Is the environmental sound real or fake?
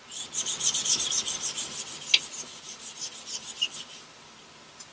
real